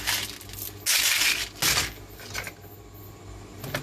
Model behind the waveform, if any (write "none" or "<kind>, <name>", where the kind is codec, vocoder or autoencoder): none